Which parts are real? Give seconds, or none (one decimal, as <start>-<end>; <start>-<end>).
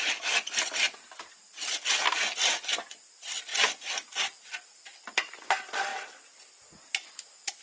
0.0-7.6